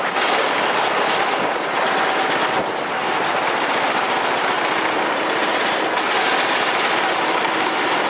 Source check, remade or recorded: recorded